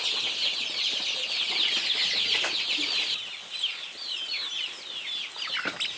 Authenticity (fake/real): real